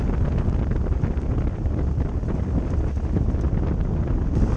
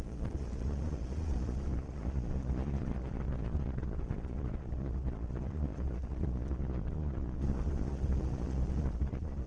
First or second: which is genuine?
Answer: first